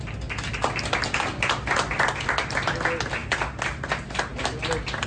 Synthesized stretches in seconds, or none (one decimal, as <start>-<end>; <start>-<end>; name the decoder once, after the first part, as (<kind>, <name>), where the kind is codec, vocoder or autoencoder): none